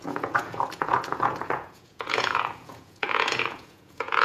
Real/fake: fake